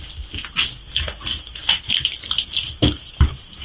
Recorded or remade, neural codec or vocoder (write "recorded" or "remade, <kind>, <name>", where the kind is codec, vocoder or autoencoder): recorded